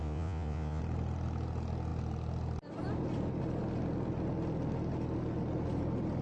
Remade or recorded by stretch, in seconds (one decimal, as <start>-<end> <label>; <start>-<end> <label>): 0.0-0.8 remade; 0.8-6.2 recorded